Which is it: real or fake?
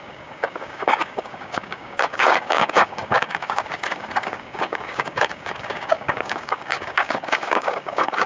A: fake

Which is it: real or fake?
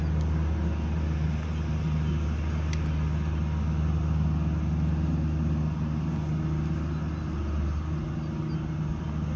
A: real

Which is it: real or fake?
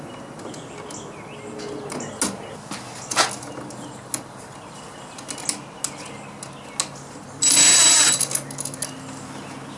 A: real